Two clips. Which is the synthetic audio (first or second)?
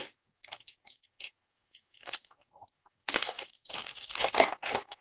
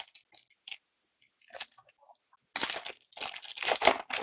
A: first